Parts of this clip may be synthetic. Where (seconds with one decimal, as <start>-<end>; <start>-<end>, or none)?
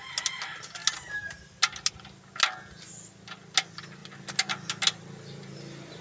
none